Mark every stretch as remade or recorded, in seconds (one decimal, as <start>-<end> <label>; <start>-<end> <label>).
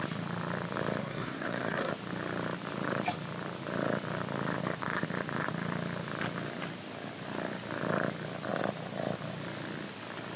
0.0-1.0 recorded; 1.0-1.9 remade; 1.9-10.4 recorded